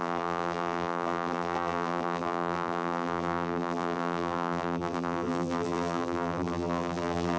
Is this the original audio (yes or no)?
no